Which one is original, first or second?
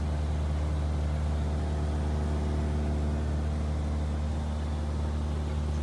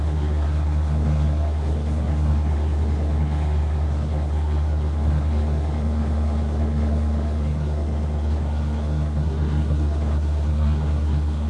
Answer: first